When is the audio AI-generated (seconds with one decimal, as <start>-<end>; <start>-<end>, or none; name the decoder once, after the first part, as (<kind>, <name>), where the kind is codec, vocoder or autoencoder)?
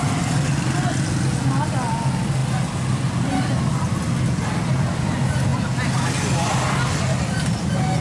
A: none